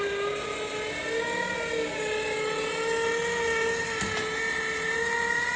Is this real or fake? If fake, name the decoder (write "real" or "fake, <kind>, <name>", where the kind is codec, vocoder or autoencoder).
real